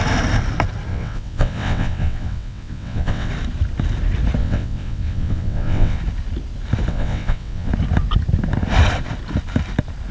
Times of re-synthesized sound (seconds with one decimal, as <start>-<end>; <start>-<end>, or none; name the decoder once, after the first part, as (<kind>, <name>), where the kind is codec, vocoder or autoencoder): 0.9-3.3 (vocoder, WaveNeXt); 4.4-6.0; 6.9-7.7